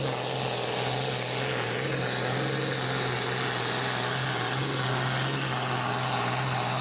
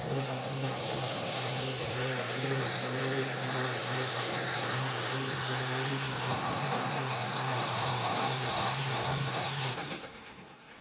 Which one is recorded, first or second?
first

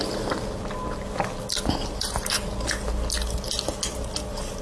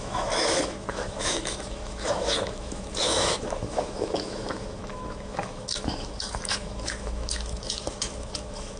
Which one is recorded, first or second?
first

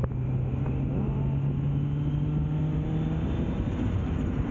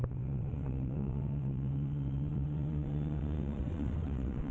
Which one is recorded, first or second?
first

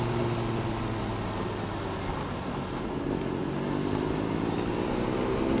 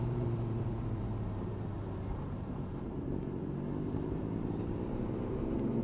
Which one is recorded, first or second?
first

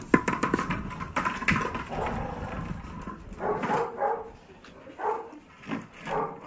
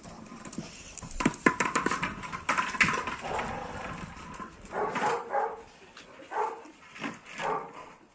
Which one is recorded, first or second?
first